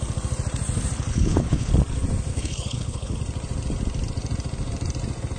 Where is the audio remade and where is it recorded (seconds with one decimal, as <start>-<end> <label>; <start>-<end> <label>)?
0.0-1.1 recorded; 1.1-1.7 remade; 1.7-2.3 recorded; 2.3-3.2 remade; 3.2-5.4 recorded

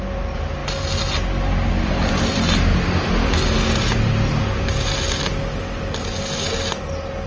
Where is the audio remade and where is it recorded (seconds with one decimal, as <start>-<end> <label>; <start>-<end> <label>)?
0.0-0.6 remade; 0.6-1.7 recorded; 1.7-2.7 remade; 2.7-7.3 recorded

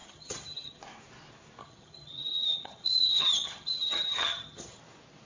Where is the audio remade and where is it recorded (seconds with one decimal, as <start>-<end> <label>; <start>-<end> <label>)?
0.0-0.8 remade; 0.8-1.6 recorded; 1.6-4.8 remade; 4.8-5.3 recorded